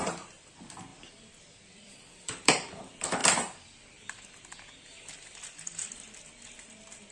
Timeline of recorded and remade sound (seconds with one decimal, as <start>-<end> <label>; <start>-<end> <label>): 0.0-0.9 recorded; 0.9-2.8 remade; 2.8-3.2 recorded; 3.2-3.9 remade; 3.9-7.1 recorded